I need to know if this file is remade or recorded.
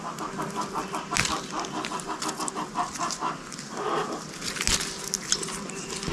recorded